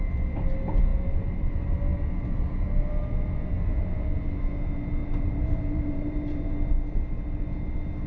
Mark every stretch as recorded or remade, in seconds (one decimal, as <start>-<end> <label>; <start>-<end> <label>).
0.0-5.0 recorded; 5.0-6.6 remade; 6.6-8.1 recorded